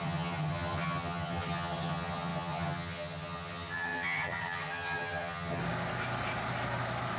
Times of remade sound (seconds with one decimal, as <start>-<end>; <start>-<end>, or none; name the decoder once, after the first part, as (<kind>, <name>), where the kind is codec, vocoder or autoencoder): 0.0-5.6 (vocoder, HiFi-GAN)